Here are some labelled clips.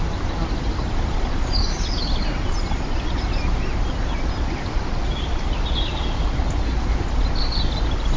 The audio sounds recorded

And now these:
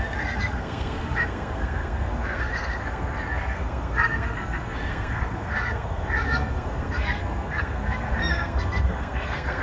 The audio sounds remade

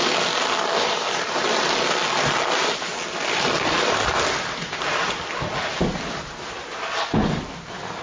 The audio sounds recorded